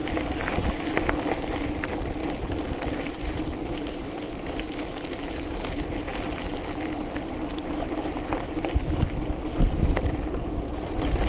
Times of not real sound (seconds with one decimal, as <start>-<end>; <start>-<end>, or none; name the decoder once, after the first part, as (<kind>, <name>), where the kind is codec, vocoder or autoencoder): 0.0-0.9 (vocoder, BigVGAN v2); 2.2-4.8; 6.1-10.2